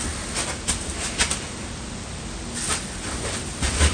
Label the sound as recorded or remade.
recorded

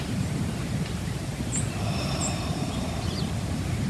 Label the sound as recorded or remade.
recorded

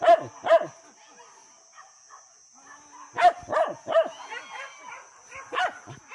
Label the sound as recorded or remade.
recorded